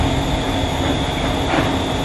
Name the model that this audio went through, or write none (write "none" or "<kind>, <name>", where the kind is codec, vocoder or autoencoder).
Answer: none